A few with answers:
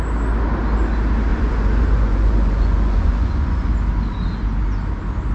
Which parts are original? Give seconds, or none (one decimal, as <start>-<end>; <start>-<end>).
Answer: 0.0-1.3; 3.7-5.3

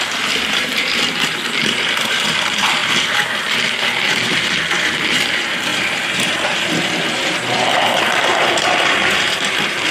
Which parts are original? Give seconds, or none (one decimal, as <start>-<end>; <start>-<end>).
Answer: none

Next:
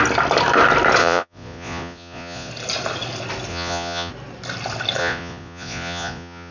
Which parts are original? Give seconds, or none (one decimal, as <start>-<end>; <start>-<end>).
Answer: 0.0-1.0; 2.5-3.5; 4.1-5.0

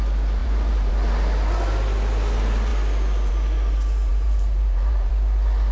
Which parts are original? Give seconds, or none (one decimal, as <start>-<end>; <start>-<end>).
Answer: 0.0-0.4; 0.9-4.1; 5.1-5.7

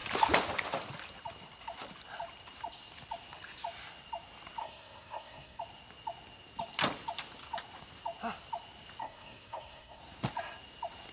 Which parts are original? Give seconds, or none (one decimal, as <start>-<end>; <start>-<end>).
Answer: 0.0-4.6; 5.6-9.0; 10.0-11.1

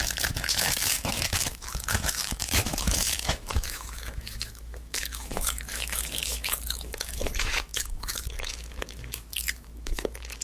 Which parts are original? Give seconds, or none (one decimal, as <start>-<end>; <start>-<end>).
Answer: none